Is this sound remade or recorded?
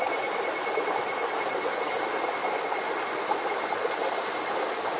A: recorded